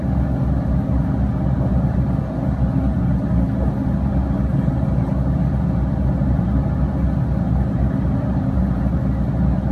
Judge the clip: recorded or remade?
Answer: recorded